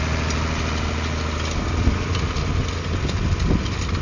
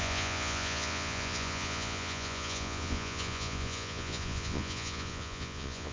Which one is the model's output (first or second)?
second